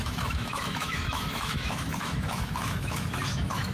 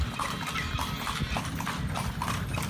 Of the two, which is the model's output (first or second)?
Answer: first